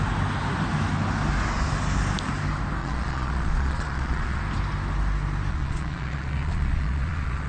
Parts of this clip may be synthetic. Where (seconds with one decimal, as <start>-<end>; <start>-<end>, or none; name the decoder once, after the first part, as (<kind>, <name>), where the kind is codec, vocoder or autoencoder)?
2.8-4.4 (vocoder, Vocos); 5.5-7.5